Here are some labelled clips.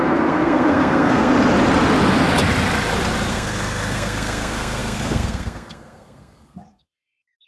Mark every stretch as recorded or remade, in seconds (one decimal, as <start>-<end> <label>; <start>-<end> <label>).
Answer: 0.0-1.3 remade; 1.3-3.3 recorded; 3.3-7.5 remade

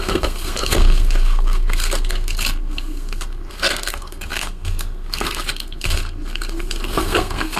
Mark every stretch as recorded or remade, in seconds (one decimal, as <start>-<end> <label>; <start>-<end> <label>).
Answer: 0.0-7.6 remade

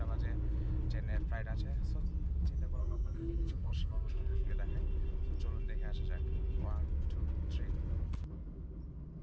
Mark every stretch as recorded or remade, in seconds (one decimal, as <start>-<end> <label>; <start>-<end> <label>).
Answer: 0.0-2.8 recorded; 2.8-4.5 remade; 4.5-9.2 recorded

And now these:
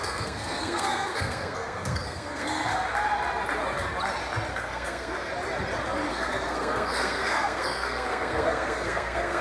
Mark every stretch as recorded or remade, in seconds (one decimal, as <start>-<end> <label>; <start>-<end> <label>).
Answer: 0.0-2.7 remade; 2.7-4.5 recorded; 4.5-5.3 remade; 5.3-6.1 recorded; 6.1-9.4 remade

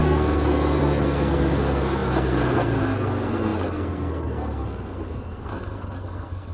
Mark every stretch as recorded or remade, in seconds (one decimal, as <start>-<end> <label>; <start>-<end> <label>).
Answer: 0.0-6.5 remade

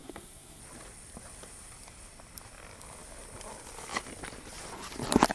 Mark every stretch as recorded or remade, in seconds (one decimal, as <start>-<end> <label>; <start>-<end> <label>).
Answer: 0.0-0.6 remade; 0.6-5.3 recorded

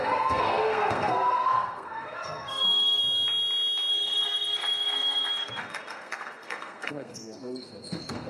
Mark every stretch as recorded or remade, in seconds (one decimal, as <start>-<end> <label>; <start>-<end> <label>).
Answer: 0.0-3.0 remade; 3.0-3.9 recorded; 3.9-8.3 remade